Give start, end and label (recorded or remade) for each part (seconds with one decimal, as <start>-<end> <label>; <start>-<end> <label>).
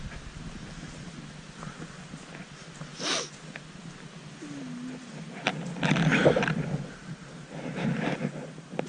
0.0-8.9 recorded